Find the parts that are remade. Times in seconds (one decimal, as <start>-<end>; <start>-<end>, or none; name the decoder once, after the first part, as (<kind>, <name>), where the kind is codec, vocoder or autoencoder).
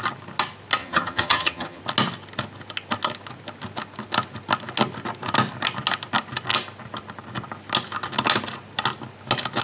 0.8-1.8 (vocoder, HiFi-GAN)